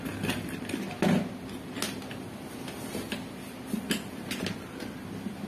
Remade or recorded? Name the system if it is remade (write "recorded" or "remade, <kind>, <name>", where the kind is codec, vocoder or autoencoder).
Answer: recorded